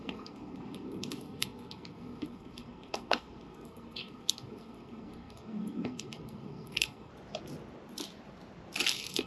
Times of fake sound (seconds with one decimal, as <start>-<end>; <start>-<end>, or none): 0.0-7.1; 8.9-9.3